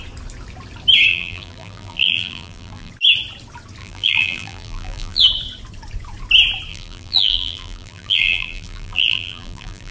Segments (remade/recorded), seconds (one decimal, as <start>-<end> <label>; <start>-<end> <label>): 0.0-1.1 recorded; 1.1-2.9 remade; 2.9-3.8 recorded; 3.8-5.2 remade; 5.2-6.7 recorded; 6.7-9.9 remade